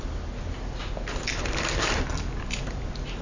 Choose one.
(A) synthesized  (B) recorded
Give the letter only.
B